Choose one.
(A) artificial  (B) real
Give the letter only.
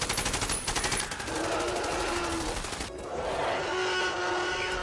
B